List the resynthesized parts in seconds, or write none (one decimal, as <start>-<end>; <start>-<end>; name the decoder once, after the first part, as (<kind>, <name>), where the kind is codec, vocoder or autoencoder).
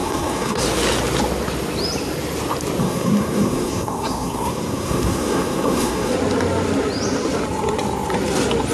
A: 0.0-0.6 (codec, SNAC); 2.8-6.1